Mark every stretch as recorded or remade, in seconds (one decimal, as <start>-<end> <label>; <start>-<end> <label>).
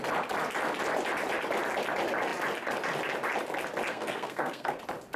0.0-3.9 recorded; 3.9-4.8 remade; 4.8-5.2 recorded